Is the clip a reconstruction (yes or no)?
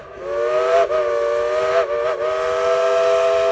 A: no